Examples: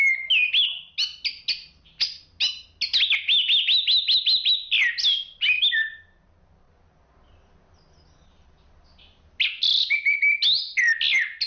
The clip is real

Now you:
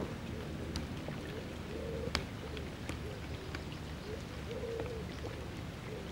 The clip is real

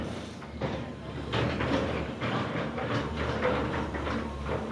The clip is fake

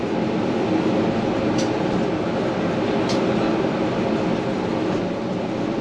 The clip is real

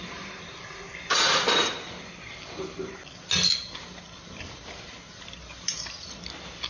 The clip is real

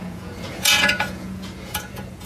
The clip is fake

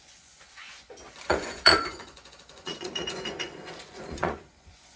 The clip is fake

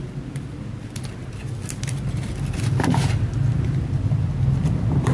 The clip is real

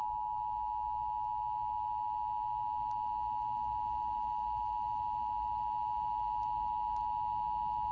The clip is real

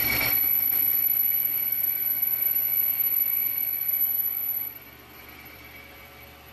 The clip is fake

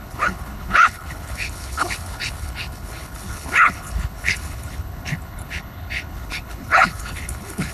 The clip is fake